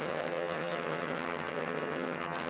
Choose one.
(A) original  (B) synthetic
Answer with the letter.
B